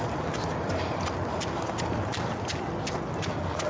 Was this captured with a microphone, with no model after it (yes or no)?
yes